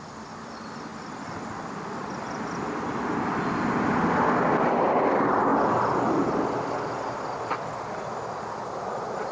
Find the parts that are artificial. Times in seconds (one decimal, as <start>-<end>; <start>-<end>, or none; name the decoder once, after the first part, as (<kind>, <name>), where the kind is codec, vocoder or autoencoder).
none